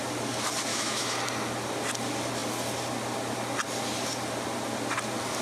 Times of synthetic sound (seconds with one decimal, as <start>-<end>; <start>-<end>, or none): 0.7-1.2